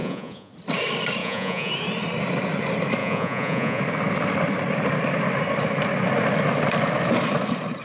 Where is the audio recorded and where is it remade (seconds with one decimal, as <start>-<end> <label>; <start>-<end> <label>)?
0.0-0.5 remade; 0.5-1.2 recorded; 1.2-1.7 remade; 1.7-3.0 recorded; 3.0-3.8 remade; 3.8-7.8 recorded